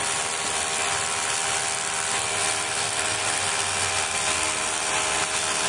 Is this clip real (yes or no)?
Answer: yes